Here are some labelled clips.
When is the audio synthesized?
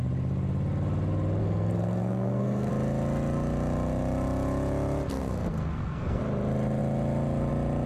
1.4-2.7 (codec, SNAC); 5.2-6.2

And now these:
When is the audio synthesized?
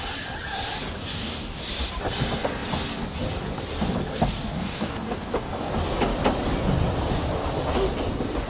1.1-1.6 (codec, DAC); 4.1-5.7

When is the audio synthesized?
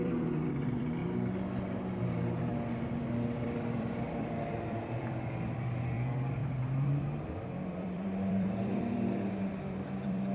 0.0-1.0 (vocoder, BigVGAN v2); 2.0-2.5; 3.4-10.3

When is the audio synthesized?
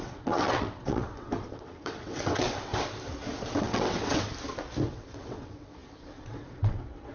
0.0-2.7 (vocoder, WaveNeXt); 3.6-4.3; 4.9-7.1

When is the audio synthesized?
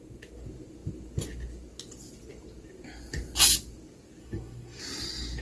4.2-4.8 (codec, SNAC)